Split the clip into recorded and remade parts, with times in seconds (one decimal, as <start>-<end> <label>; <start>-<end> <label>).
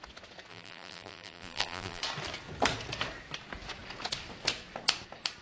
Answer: 0.0-0.5 recorded; 0.5-2.0 remade; 2.0-5.4 recorded